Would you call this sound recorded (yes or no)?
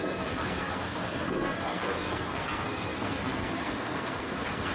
no